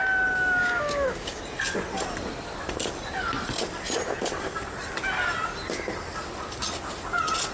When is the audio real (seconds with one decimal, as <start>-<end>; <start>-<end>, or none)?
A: 0.0-0.6; 1.4-7.5